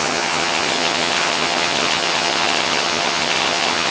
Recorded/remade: remade